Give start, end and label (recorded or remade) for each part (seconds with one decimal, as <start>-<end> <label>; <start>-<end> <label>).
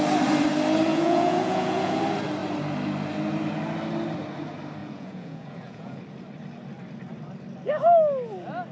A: 0.0-0.9 recorded; 0.9-2.0 remade; 2.0-4.8 recorded; 4.8-6.0 remade; 6.0-8.7 recorded